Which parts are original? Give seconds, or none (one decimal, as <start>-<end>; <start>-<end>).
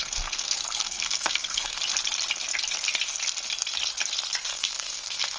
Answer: 1.8-4.4